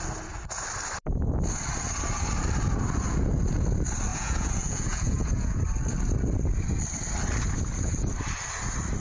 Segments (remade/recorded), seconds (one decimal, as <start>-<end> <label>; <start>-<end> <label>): 0.0-4.1 recorded; 4.1-5.6 remade; 5.6-9.0 recorded